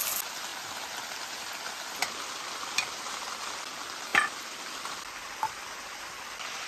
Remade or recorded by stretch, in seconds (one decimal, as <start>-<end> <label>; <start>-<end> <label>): 0.0-6.7 recorded